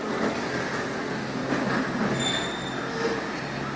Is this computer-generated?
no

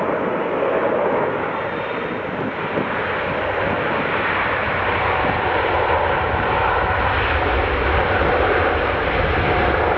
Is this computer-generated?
no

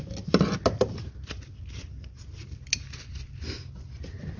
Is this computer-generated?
no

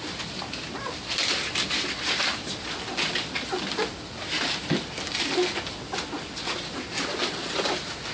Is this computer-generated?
yes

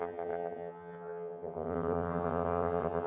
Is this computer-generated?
yes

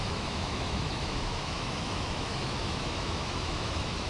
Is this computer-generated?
yes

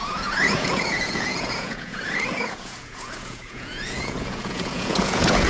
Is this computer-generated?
yes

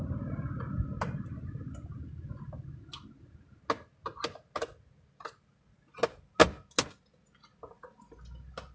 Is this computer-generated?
no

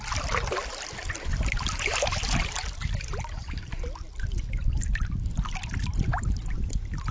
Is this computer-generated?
no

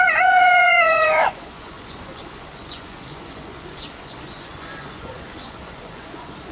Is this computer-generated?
yes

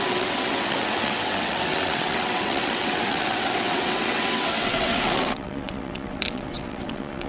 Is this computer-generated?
yes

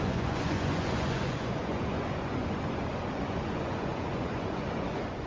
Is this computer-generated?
yes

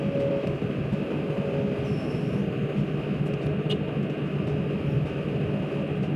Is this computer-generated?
no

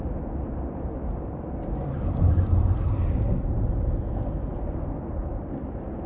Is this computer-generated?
no